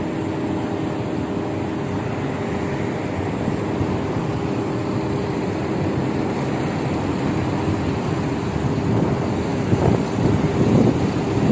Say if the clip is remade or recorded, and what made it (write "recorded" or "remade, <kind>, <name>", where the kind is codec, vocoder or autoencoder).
recorded